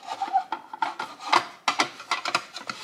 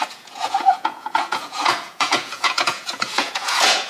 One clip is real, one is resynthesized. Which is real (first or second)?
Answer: first